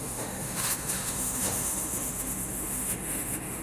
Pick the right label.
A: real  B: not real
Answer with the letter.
B